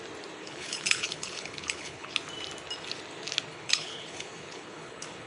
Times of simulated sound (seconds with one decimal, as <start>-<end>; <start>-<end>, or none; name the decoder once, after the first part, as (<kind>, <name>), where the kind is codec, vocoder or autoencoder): 0.4-2.1 (codec, HILCodec); 3.5-5.3